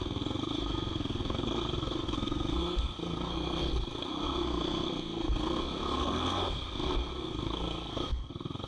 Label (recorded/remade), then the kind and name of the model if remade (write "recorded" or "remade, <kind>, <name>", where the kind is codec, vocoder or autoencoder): remade, codec, SNAC